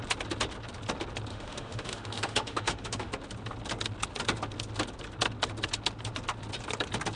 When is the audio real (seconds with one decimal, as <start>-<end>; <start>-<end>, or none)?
0.0-1.3; 3.1-7.2